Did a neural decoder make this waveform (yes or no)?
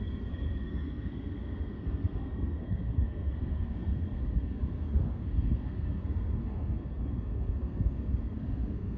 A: yes